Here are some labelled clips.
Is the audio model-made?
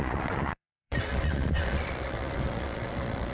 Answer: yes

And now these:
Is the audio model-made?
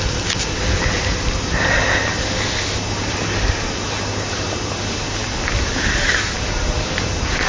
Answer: no